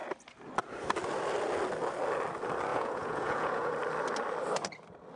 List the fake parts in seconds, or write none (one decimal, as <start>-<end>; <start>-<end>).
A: 2.7-3.7

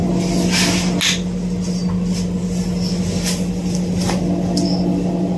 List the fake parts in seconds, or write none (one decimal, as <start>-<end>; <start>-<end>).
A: none

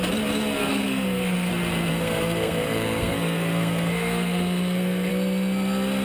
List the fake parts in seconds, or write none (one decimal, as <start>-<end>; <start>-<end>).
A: 0.7-1.5; 1.9-5.1

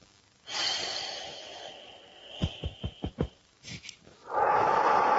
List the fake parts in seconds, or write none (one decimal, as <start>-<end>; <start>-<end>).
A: 3.1-5.2

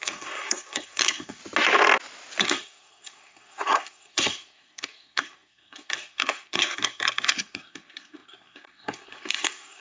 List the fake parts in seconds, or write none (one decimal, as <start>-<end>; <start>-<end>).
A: 0.0-1.4; 2.4-9.8

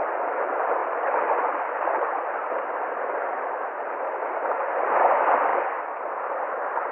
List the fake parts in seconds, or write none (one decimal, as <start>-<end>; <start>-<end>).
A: 0.0-5.5; 6.0-6.9

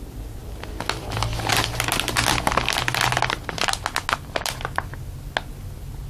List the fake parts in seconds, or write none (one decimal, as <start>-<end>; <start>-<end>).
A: none

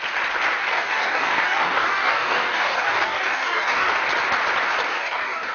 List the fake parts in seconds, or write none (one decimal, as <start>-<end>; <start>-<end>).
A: 0.6-3.9; 5.0-5.5